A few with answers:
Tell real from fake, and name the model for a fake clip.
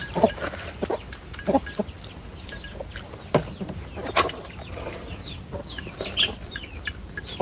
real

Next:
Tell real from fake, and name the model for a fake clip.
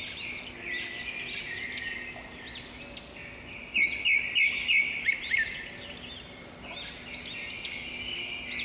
real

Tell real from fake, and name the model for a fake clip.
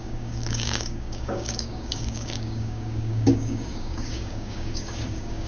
fake, codec, DAC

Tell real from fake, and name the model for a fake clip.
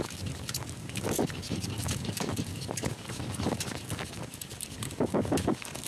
fake, codec, DAC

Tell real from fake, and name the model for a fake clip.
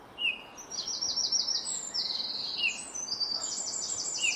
real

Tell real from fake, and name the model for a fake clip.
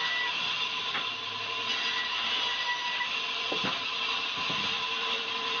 real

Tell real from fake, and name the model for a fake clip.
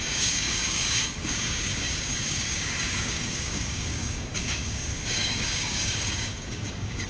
fake, codec, DAC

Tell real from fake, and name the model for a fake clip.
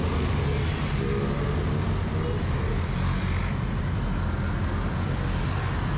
real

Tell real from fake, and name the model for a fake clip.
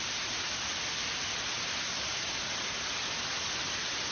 real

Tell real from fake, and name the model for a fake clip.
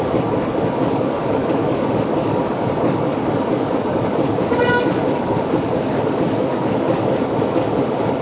fake, codec, DAC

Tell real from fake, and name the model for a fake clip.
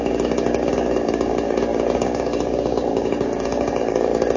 fake, codec, DAC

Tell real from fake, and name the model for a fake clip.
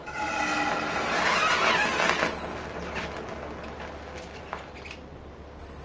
real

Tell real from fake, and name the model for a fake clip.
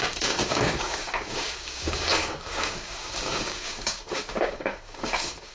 fake, codec, DAC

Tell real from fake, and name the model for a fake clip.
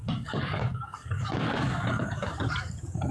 fake, codec, DAC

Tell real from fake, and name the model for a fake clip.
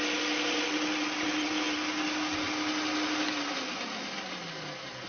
real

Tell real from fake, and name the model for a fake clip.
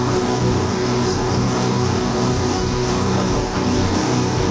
fake, codec, DAC